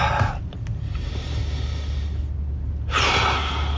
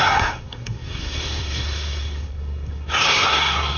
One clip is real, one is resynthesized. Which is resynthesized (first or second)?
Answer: second